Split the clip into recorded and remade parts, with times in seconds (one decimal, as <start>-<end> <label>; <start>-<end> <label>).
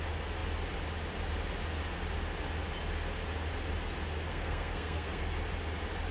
0.0-4.3 recorded; 4.3-5.2 remade; 5.2-6.1 recorded